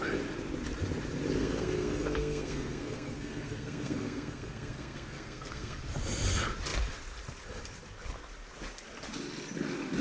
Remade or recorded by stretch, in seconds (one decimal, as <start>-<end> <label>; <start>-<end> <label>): 0.0-1.4 recorded; 1.4-5.8 remade; 5.8-10.0 recorded